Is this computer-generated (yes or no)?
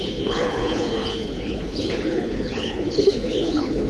yes